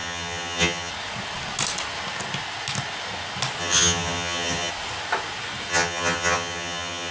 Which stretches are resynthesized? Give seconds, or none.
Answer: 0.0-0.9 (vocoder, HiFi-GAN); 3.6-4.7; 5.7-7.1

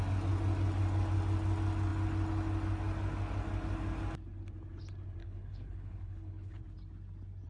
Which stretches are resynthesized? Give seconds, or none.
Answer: 5.2-6.6 (codec, HILCodec)

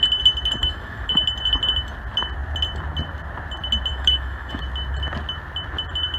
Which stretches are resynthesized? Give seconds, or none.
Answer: 0.6-1.2 (autoencoder, DAC-VAE); 3.9-4.6

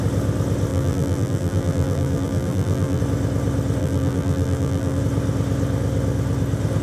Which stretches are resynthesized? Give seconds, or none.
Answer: 0.7-3.0 (vocoder, BigVGAN v2); 3.8-5.0